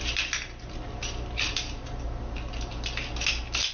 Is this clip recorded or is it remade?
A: recorded